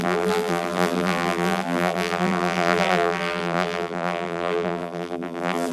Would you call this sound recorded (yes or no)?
no